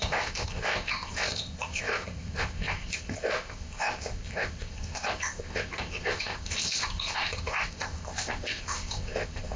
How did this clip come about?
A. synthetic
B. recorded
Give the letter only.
A